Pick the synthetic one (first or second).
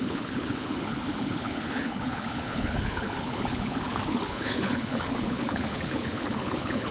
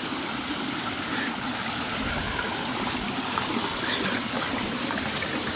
first